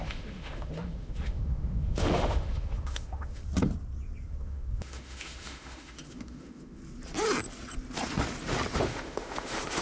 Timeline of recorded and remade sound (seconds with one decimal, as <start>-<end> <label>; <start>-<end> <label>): 0.0-3.4 remade; 3.4-4.3 recorded; 4.3-6.8 remade; 6.8-8.8 recorded; 8.8-9.8 remade